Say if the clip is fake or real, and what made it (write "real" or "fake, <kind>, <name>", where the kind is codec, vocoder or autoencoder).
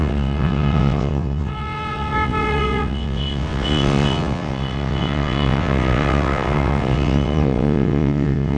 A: fake, vocoder, WaveNeXt